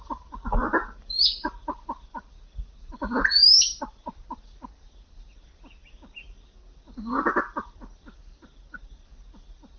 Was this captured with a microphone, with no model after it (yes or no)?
no